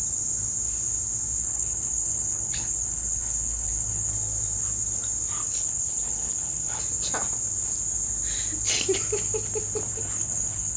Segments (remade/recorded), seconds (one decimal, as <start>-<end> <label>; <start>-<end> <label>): 0.0-1.4 recorded; 1.4-4.1 remade; 4.1-5.4 recorded; 5.4-6.8 remade; 6.8-9.9 recorded; 9.9-10.8 remade